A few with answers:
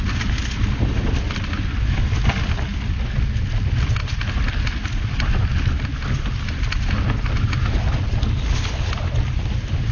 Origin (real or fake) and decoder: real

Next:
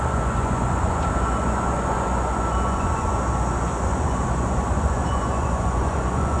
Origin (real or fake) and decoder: fake, vocoder, Vocos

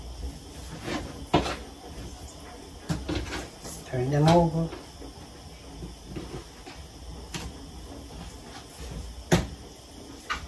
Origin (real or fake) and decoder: real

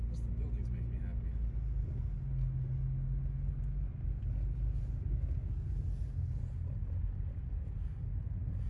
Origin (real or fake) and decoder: real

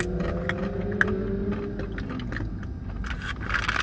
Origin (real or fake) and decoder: real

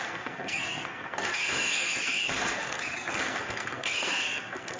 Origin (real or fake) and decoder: fake, codec, SNAC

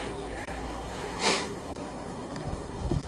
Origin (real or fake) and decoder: fake, codec, SNAC